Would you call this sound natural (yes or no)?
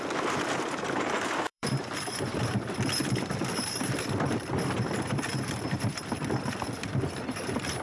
no